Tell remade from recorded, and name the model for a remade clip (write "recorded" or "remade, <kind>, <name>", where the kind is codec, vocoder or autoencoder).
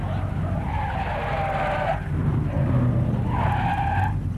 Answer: recorded